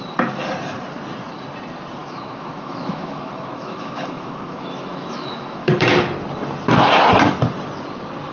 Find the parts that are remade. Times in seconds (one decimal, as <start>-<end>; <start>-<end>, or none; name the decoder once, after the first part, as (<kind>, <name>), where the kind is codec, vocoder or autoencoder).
2.0-5.7 (autoencoder, DAC-VAE)